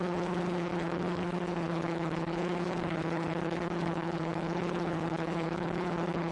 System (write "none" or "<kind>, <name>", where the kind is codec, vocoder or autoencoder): codec, HILCodec